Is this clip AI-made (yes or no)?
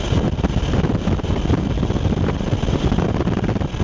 no